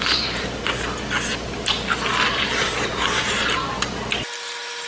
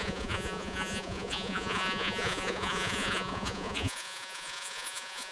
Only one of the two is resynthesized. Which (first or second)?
second